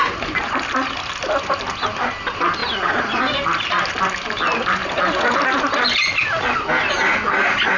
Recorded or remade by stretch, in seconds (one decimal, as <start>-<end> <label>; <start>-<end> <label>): 0.0-7.8 recorded

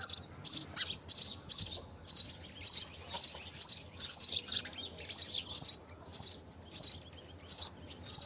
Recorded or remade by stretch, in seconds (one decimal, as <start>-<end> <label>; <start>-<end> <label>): 0.0-8.3 recorded

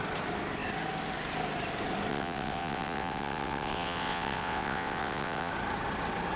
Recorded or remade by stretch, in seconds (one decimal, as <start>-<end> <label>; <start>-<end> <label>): 0.0-2.1 recorded; 2.1-5.5 remade; 5.5-6.4 recorded

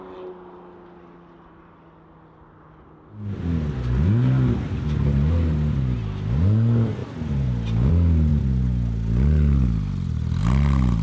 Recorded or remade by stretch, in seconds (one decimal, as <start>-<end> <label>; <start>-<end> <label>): 0.0-11.0 recorded

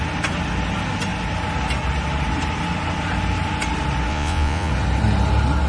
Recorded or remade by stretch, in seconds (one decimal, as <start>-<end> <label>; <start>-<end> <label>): 0.0-4.1 recorded; 4.1-4.7 remade; 4.7-5.7 recorded

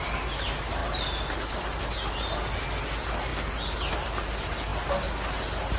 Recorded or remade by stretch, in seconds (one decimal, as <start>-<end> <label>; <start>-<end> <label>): 0.0-5.8 recorded

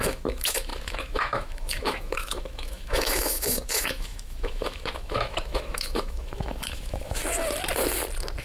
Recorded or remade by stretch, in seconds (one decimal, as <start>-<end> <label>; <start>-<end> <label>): 0.0-7.2 remade; 7.2-8.4 recorded

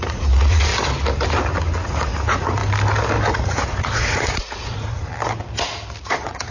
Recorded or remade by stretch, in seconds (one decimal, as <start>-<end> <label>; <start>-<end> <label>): 0.0-0.7 remade; 0.7-1.9 recorded; 1.9-2.6 remade; 2.6-3.3 recorded; 3.3-5.1 remade; 5.1-6.0 recorded; 6.0-6.5 remade